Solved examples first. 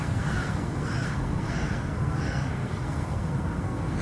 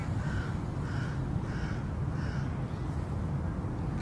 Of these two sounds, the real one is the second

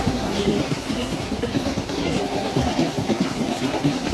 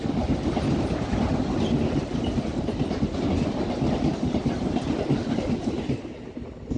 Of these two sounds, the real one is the second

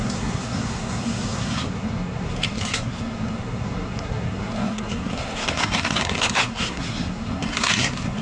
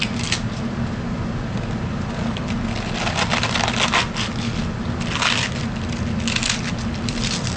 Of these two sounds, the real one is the second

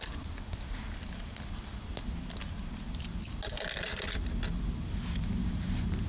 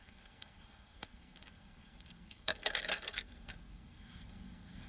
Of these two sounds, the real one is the first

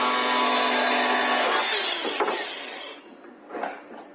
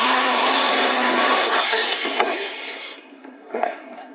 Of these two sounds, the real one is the first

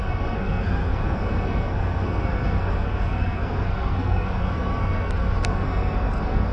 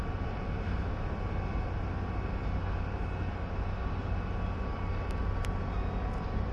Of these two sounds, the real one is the second